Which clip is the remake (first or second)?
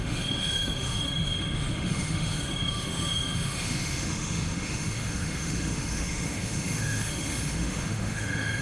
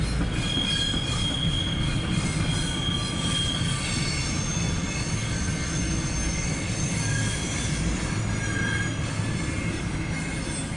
first